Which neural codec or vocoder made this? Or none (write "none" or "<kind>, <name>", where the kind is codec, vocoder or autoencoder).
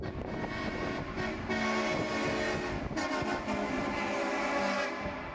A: none